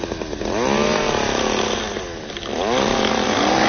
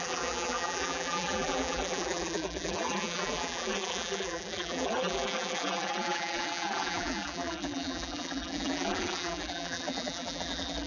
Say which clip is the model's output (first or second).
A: second